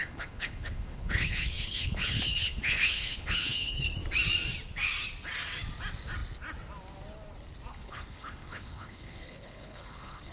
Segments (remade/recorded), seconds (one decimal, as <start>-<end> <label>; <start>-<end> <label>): 0.0-3.9 remade; 3.9-7.7 recorded; 7.7-10.3 remade